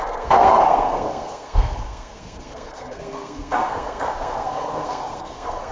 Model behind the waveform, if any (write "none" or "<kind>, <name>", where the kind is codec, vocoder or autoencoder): codec, SNAC